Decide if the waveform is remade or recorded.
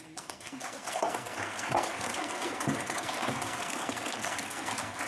remade